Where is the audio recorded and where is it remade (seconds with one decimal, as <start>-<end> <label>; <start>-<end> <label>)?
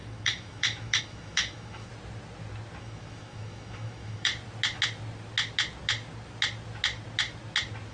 0.0-1.9 remade; 1.9-2.8 recorded; 2.8-4.3 remade; 4.3-7.9 recorded